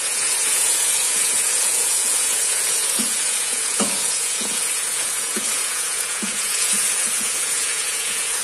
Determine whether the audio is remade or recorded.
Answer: remade